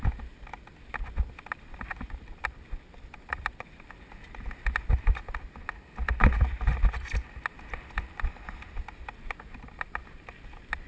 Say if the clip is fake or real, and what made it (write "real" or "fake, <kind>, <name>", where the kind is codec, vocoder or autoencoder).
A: real